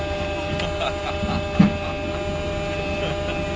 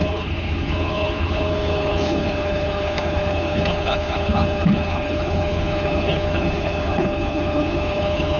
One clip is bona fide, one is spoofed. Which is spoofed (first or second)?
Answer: second